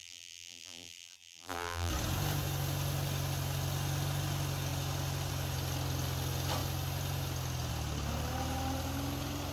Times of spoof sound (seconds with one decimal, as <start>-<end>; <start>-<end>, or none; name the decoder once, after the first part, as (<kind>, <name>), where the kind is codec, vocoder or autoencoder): 0.0-1.9 (vocoder, BigVGAN v2)